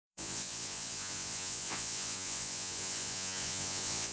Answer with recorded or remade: remade